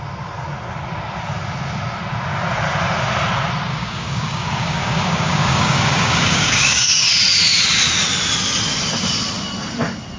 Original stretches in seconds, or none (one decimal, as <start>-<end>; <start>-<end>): 0.0-3.7; 7.1-10.2